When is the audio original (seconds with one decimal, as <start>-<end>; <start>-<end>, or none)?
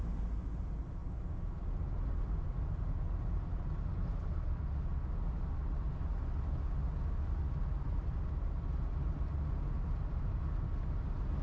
0.0-11.4